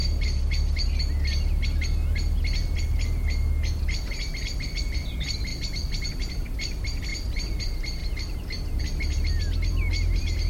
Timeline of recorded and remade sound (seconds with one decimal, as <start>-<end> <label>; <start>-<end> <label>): 0.0-1.0 remade; 1.0-7.1 recorded; 7.1-7.6 remade; 7.6-8.0 recorded; 8.0-8.8 remade; 8.8-10.5 recorded